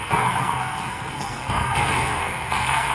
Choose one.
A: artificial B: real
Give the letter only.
A